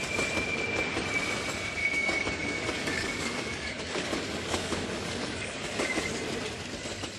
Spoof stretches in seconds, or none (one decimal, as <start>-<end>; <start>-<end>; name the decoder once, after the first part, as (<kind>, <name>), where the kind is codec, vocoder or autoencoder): 1.8-6.1 (codec, DAC)